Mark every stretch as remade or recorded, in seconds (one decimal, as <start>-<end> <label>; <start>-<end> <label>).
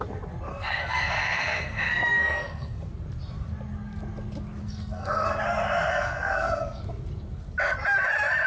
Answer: 0.0-0.5 recorded; 0.5-2.9 remade; 2.9-4.6 recorded; 4.6-5.4 remade; 5.4-5.9 recorded; 5.9-6.8 remade; 6.8-8.5 recorded